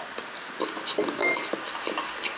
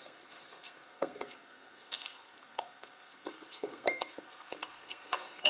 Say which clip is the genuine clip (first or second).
first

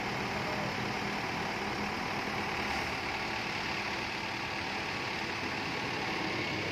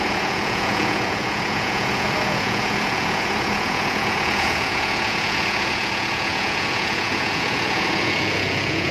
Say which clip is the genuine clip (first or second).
first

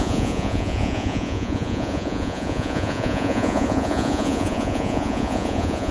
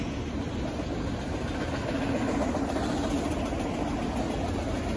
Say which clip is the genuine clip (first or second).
second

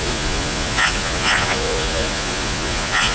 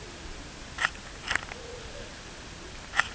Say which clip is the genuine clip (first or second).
second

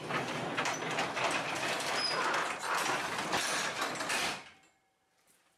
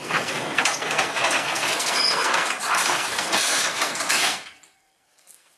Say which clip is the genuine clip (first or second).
first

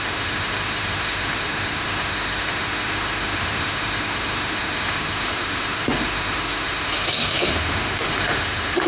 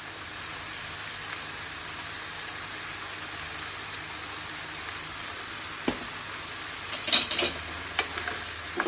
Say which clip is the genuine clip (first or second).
second